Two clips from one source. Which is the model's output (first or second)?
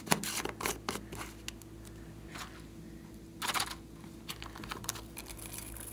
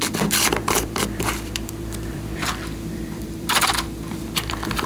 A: second